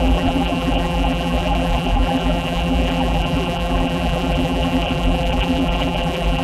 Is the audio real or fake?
fake